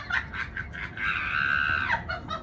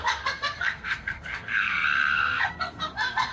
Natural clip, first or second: first